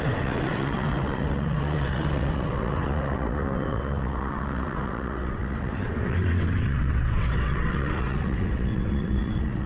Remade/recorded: remade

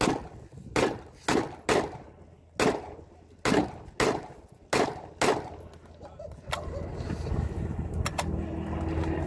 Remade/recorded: recorded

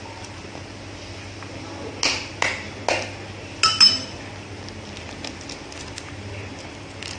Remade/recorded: recorded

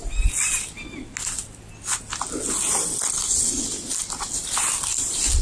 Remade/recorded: recorded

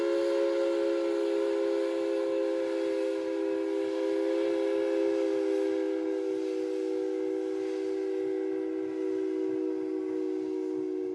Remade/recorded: recorded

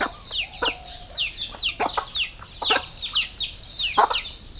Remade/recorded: recorded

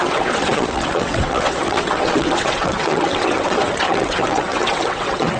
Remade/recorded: remade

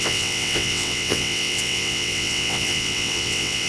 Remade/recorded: remade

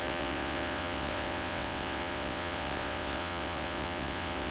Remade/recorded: remade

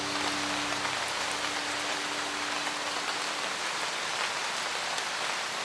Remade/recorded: recorded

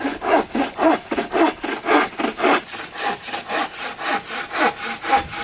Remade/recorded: recorded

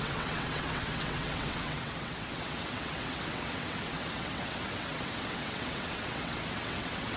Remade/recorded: remade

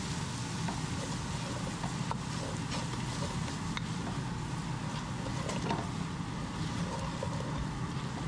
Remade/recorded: recorded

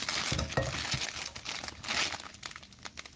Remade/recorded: recorded